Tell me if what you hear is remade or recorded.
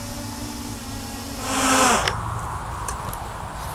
recorded